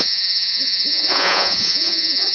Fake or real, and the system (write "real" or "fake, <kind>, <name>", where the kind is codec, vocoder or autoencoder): fake, vocoder, Vocos